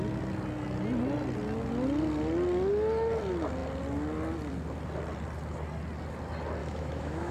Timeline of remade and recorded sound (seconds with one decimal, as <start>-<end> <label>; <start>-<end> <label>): 0.0-6.6 recorded; 6.6-7.3 remade